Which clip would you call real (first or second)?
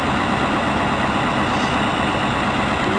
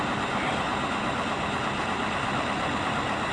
first